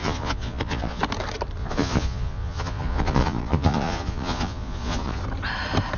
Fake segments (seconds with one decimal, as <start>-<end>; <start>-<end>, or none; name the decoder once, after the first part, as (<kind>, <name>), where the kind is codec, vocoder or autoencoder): 0.0-1.0 (vocoder, Vocos); 1.6-5.2